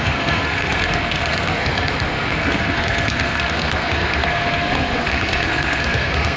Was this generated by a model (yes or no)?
yes